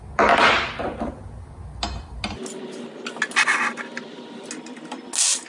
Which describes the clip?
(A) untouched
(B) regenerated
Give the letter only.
A